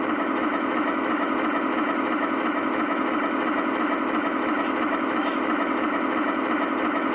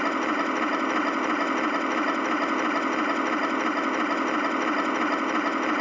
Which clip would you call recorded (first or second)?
second